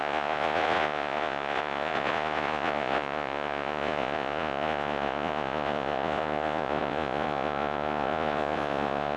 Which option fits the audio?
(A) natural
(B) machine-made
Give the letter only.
B